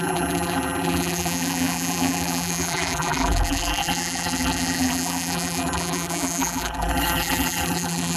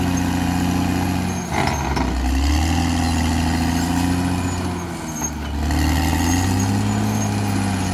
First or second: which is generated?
first